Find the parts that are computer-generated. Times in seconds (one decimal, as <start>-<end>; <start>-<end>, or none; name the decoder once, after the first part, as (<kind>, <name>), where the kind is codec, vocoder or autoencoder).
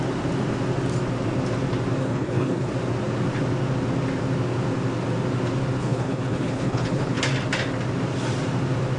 2.0-2.7 (codec, HILCodec); 5.8-7.2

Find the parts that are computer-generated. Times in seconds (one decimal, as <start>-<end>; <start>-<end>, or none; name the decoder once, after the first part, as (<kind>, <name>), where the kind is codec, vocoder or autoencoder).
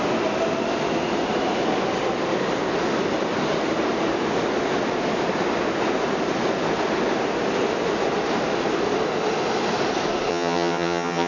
10.3-11.3 (vocoder, HiFi-GAN)